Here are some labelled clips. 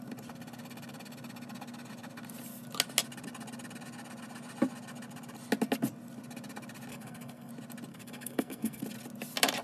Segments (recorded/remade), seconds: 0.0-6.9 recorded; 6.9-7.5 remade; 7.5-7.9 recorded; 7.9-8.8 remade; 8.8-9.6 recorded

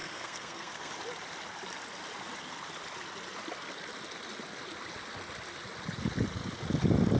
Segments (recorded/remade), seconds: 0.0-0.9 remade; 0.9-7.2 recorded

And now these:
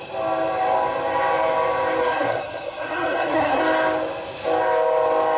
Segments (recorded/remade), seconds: 0.0-2.0 recorded; 2.0-3.6 remade; 3.6-5.4 recorded